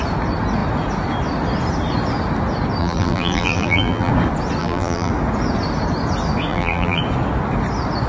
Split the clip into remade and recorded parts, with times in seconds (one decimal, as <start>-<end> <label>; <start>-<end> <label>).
0.0-2.8 recorded; 2.8-4.1 remade; 4.1-4.6 recorded; 4.6-5.1 remade; 5.1-6.5 recorded; 6.5-7.0 remade; 7.0-8.1 recorded

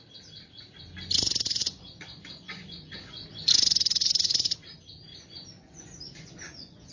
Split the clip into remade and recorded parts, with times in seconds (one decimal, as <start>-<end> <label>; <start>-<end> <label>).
0.0-1.6 recorded; 1.6-3.5 remade; 3.5-5.1 recorded; 5.1-6.9 remade

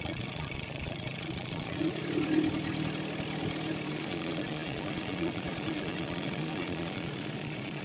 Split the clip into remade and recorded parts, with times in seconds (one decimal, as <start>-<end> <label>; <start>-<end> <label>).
0.0-2.0 remade; 2.0-3.9 recorded; 3.9-7.8 remade

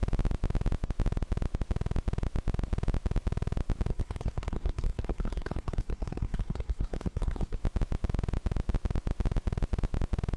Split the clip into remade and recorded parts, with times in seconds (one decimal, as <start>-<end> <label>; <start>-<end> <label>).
0.0-3.9 recorded; 3.9-7.6 remade; 7.6-10.4 recorded

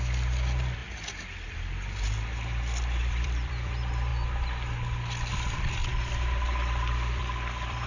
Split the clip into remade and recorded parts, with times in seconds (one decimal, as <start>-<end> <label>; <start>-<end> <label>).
0.0-0.8 remade; 0.8-3.0 recorded; 3.0-4.1 remade; 4.1-5.3 recorded; 5.3-7.9 remade

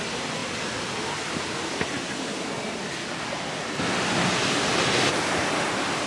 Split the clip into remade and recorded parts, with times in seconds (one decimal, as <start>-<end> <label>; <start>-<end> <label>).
0.0-6.1 recorded